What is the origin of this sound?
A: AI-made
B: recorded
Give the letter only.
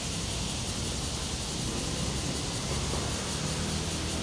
B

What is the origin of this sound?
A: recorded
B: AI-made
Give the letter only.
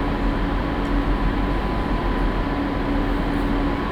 A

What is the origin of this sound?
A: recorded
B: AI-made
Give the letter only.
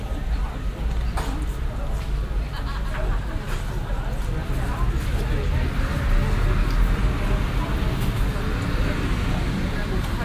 A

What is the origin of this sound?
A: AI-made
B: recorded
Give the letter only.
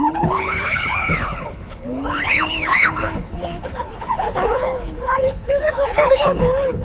A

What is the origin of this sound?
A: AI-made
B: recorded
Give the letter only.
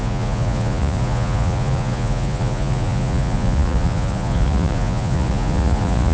A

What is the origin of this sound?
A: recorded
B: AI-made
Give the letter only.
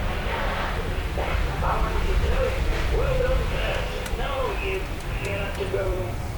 B